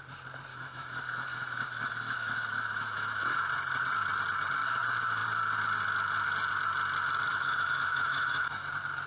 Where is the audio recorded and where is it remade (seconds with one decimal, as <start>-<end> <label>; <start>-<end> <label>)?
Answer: 0.0-0.5 recorded; 0.5-3.4 remade; 3.4-7.3 recorded; 7.3-8.7 remade; 8.7-9.1 recorded